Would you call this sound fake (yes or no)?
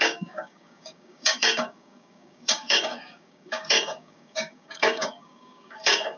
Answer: yes